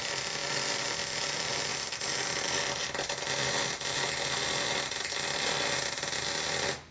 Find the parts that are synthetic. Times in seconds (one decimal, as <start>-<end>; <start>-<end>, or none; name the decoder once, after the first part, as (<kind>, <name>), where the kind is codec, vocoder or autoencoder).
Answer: none

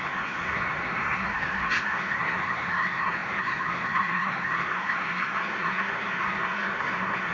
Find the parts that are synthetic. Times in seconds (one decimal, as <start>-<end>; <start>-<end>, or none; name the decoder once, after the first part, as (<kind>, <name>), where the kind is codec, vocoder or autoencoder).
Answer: 0.0-7.3 (codec, SNAC)

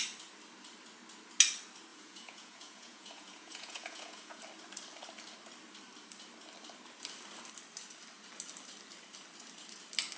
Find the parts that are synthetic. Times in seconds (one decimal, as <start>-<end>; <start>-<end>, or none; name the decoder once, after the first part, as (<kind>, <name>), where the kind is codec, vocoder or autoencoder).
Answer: 1.9-4.4 (vocoder, Vocos)